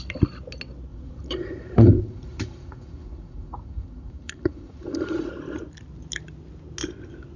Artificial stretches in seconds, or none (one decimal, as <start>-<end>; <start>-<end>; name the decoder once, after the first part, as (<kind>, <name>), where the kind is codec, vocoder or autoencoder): 0.9-5.3 (vocoder, Vocos)